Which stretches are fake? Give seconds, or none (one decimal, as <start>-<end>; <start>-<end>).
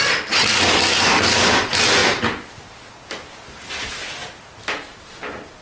none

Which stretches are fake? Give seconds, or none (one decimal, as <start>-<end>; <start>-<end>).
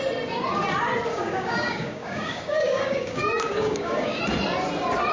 1.1-4.2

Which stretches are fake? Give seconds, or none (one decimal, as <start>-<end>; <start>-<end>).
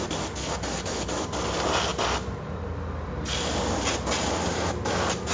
none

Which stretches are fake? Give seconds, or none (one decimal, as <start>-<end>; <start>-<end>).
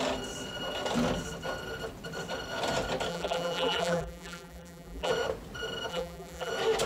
3.1-5.1; 5.9-6.5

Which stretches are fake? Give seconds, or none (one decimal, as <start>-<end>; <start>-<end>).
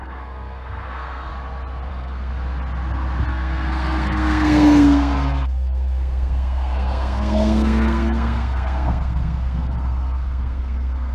0.0-1.3; 1.9-2.3; 3.3-11.1